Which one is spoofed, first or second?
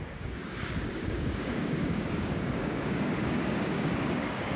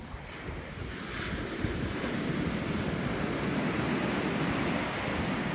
first